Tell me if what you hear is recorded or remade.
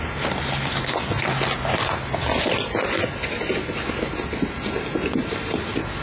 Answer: recorded